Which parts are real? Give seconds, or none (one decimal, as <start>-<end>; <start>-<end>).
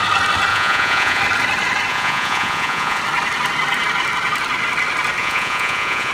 0.0-0.5; 1.2-1.9; 3.0-5.2